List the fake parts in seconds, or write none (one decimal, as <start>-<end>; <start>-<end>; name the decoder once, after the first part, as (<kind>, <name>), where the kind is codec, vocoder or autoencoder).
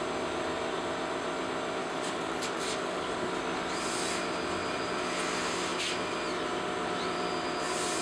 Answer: 1.8-3.3 (codec, DAC)